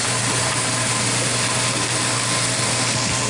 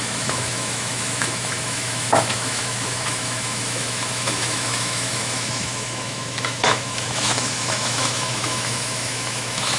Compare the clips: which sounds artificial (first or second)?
second